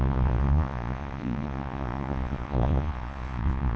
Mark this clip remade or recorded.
remade